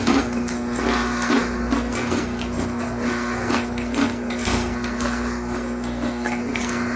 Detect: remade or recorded remade